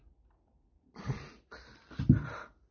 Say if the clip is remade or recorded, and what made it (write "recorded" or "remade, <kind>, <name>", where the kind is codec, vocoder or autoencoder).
remade, vocoder, BigVGAN v2